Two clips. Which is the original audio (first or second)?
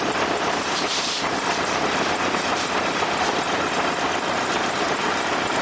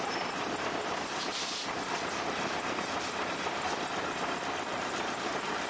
second